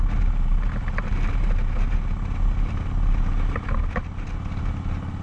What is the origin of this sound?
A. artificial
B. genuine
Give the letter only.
B